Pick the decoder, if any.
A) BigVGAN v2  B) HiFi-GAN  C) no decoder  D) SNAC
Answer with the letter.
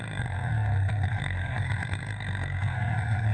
D